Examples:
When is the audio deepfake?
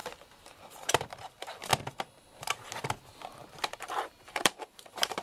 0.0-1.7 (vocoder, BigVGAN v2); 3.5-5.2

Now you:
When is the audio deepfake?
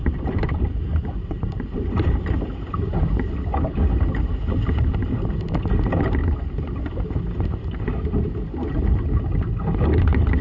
0.0-2.2 (vocoder, BigVGAN v2)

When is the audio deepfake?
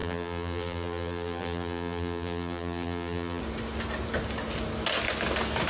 0.0-3.4 (vocoder, BigVGAN v2)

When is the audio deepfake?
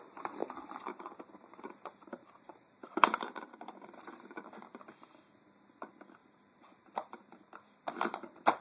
0.4-4.5 (vocoder, BigVGAN v2); 6.2-7.8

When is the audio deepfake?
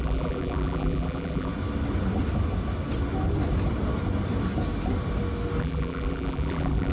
0.0-1.5 (vocoder, BigVGAN v2); 5.6-6.9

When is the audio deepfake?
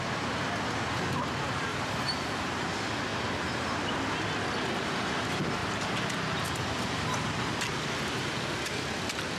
1.7-2.4 (vocoder, BigVGAN v2); 3.1-4.0; 5.6-6.9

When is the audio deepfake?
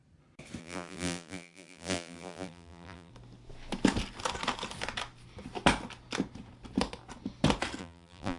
0.6-3.1 (vocoder, BigVGAN v2); 7.8-8.4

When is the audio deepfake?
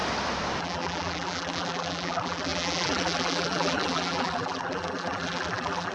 0.6-5.9 (vocoder, BigVGAN v2)